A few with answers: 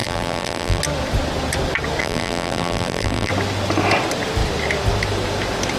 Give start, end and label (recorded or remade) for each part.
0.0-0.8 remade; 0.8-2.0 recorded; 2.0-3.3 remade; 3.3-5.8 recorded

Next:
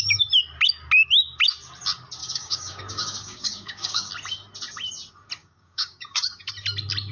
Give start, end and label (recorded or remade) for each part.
0.0-2.2 recorded; 2.2-4.1 remade; 4.1-5.4 recorded; 5.4-6.5 remade; 6.5-7.1 recorded

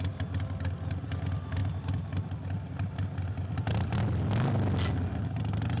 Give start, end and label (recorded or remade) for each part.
0.0-5.8 recorded

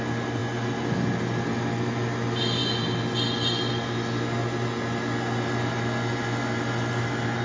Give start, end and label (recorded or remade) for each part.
0.0-7.4 recorded

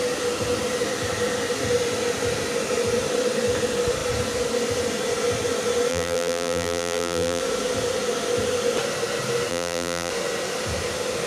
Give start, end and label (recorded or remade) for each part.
0.0-5.9 recorded; 5.9-7.4 remade; 7.4-9.5 recorded; 9.5-10.1 remade; 10.1-11.3 recorded

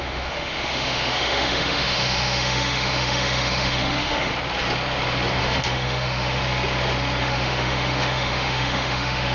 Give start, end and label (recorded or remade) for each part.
0.0-4.3 remade; 4.3-5.4 recorded; 5.4-6.4 remade; 6.4-7.2 recorded; 7.2-9.3 remade

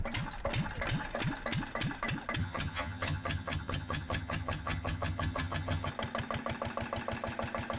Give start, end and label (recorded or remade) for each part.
0.0-2.4 recorded; 2.4-5.9 remade; 5.9-7.8 recorded